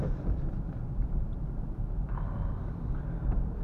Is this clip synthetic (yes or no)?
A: yes